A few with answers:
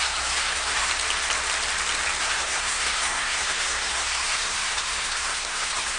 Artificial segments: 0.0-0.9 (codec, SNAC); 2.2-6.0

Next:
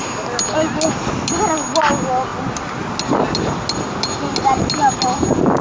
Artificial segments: none

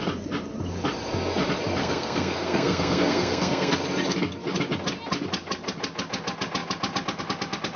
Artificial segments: 1.8-3.7 (codec, SNAC)

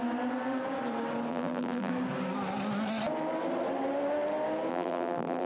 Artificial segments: 1.3-1.9 (vocoder, BigVGAN v2); 4.7-5.5

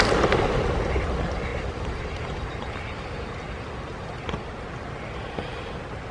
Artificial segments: 1.5-2.2 (vocoder, BigVGAN v2)